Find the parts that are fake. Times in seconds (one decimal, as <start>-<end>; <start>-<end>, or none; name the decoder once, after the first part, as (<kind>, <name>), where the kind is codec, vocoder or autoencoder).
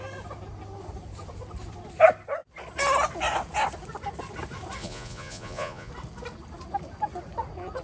4.8-5.9 (vocoder, Vocos)